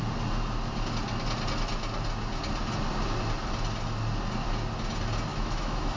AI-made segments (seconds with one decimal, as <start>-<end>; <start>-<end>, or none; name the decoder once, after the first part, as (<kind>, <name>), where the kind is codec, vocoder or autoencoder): 5.3-6.0 (autoencoder, DAC-VAE)

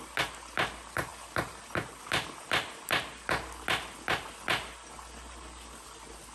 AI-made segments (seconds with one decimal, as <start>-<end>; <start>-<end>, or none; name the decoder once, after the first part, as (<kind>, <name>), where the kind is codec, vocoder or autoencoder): none

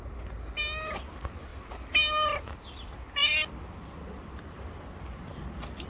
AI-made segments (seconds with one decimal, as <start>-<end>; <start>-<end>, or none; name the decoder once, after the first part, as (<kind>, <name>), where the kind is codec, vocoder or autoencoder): none

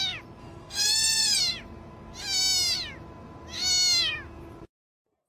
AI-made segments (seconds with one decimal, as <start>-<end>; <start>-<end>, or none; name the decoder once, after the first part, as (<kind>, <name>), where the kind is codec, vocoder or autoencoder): 0.4-1.4 (codec, SNAC)

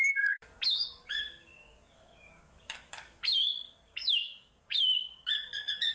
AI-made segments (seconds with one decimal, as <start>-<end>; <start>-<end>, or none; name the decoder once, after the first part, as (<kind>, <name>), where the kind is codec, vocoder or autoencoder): 0.0-5.9 (codec, DAC)

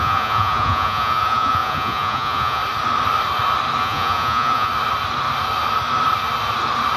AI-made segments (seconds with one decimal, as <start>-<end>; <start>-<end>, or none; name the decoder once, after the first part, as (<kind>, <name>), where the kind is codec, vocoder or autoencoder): 0.0-2.6 (vocoder, Vocos); 3.8-4.7

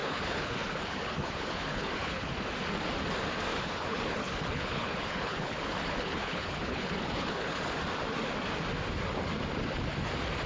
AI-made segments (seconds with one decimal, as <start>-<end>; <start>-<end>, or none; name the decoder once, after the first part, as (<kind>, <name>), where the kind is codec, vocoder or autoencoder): 0.0-2.3 (codec, HILCodec); 3.5-7.8

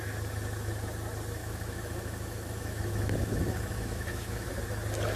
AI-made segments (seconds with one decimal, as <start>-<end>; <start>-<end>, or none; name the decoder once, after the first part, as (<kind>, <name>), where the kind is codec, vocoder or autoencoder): 1.4-4.5 (autoencoder, DAC-VAE)